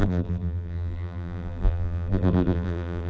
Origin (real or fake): fake